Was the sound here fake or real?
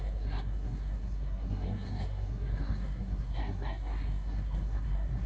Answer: fake